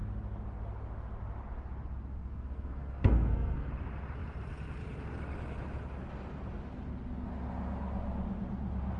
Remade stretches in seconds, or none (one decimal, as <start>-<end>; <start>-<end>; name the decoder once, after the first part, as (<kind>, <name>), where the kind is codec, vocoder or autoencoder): 2.1-3.7 (codec, SNAC)